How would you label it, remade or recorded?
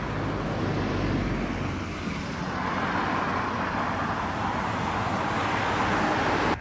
recorded